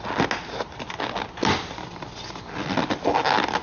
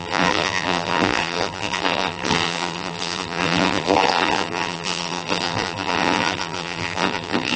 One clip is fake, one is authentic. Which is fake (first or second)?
second